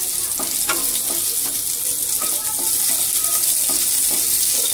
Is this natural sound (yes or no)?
yes